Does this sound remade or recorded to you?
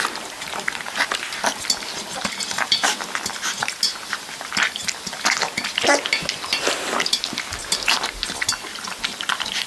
recorded